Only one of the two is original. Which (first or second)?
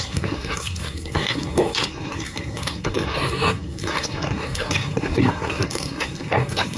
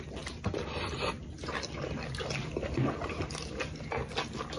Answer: second